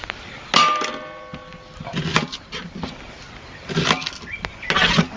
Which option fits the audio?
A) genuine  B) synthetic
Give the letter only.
A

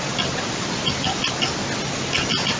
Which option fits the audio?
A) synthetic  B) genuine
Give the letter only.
B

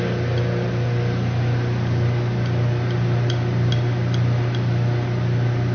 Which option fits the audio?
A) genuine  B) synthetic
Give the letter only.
A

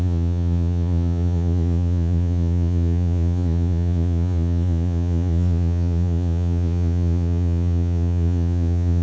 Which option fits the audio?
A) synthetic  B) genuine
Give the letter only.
A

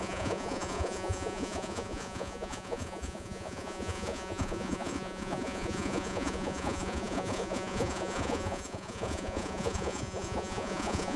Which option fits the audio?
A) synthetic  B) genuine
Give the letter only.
A